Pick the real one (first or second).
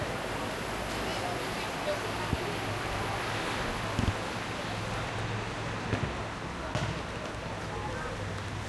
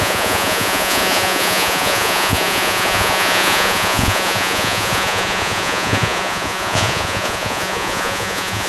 first